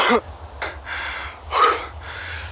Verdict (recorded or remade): recorded